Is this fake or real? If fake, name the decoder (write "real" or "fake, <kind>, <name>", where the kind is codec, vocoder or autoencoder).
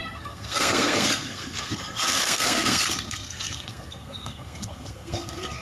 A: fake, codec, SNAC